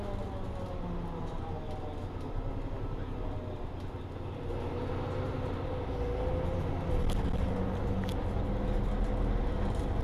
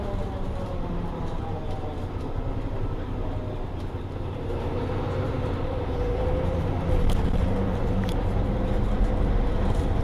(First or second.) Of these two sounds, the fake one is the second